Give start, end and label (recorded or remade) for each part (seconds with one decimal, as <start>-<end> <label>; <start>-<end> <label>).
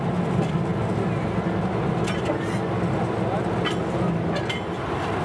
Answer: 0.0-5.2 recorded